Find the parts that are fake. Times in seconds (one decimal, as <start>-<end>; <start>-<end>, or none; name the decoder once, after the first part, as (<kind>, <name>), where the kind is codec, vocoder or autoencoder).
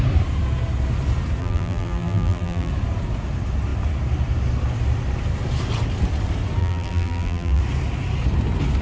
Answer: 1.4-2.7 (vocoder, BigVGAN v2); 6.6-7.6